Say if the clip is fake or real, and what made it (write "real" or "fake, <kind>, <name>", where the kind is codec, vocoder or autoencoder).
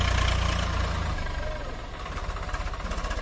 real